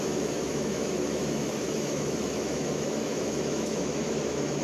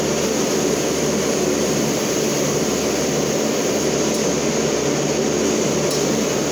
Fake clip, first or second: first